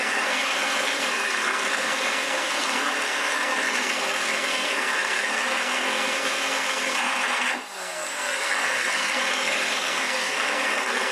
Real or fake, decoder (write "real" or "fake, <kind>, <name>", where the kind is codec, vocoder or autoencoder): fake, codec, SNAC